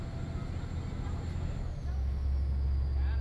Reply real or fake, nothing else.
real